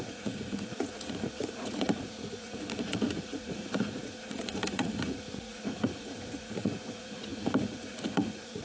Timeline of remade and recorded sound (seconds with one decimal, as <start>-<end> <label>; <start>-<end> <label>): 0.0-8.6 remade